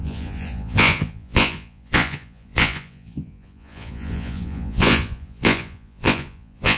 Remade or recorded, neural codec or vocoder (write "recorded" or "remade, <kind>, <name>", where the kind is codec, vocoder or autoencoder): remade, vocoder, Vocos